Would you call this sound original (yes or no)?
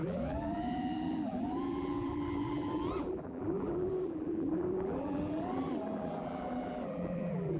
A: no